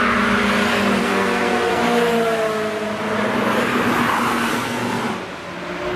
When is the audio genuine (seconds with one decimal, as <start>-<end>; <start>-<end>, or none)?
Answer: 0.0-1.0; 1.8-4.3; 5.0-6.0